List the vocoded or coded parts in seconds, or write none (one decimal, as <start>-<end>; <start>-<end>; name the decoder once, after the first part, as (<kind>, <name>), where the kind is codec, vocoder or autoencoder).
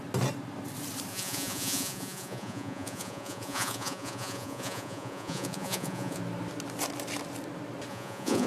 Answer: 1.1-6.2 (vocoder, Vocos); 7.9-8.5